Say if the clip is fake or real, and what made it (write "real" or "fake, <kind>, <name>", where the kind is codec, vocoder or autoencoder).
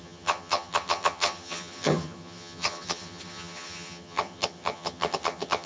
fake, vocoder, HiFi-GAN